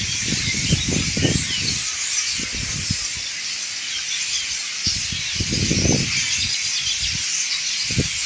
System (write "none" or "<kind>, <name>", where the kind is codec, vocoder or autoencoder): none